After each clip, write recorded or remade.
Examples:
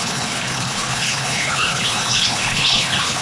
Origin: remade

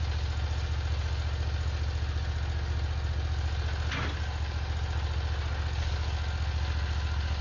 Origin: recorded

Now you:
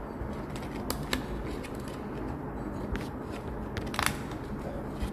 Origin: recorded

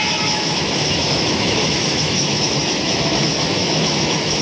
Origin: remade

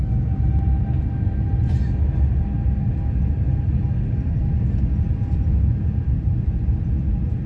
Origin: recorded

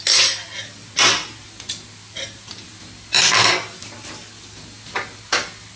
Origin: recorded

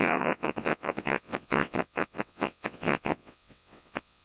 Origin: remade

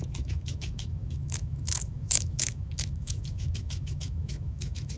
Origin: remade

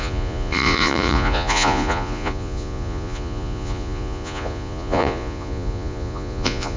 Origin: remade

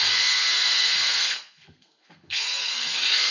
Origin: remade